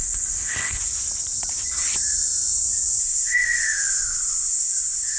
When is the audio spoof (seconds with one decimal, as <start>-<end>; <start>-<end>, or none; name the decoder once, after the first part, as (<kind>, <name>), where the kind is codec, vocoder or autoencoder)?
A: 0.0-0.8 (codec, ZipCodec); 3.0-5.2